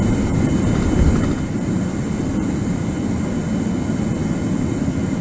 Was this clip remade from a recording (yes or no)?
no